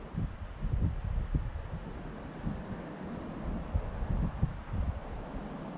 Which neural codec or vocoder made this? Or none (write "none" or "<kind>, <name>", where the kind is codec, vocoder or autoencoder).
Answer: none